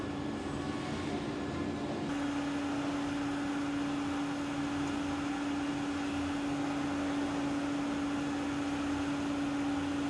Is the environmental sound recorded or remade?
recorded